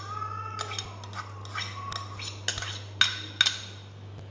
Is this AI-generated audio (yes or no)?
no